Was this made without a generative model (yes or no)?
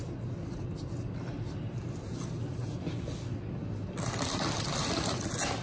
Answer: yes